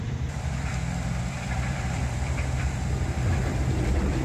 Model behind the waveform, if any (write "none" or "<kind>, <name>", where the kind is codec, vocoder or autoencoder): vocoder, BigVGAN v2